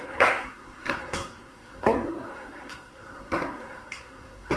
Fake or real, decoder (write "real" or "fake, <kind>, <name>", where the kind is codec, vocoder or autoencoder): fake, codec, SNAC